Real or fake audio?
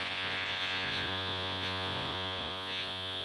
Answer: fake